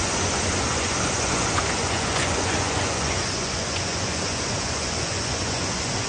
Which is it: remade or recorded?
remade